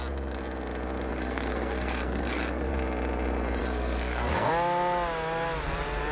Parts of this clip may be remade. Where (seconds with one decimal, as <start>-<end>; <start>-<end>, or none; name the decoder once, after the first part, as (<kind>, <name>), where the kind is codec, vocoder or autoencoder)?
1.1-2.7 (codec, SNAC); 3.6-4.5